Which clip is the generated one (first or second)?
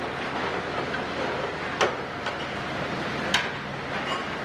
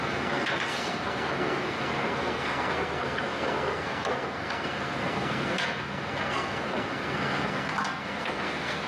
second